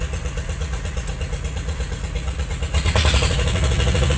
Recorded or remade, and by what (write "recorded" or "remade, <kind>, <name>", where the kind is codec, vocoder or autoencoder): remade, vocoder, Vocos